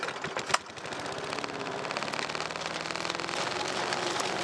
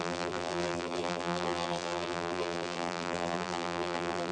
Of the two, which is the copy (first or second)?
second